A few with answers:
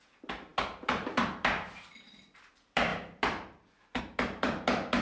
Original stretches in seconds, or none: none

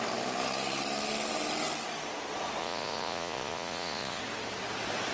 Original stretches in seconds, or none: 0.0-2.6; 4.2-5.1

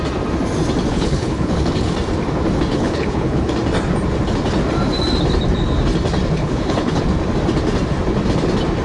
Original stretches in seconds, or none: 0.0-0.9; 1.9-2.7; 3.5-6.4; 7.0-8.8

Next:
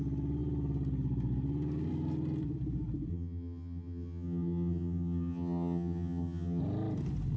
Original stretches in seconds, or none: 0.0-3.1; 6.6-7.4